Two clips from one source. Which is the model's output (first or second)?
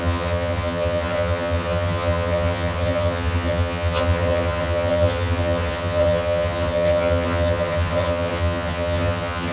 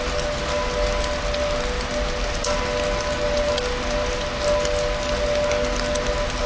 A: first